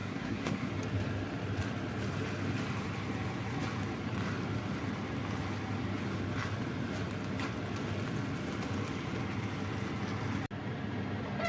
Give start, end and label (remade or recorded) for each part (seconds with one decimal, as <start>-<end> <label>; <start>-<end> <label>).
0.0-0.7 remade; 0.7-11.5 recorded